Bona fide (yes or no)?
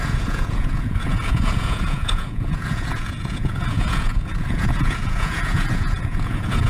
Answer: no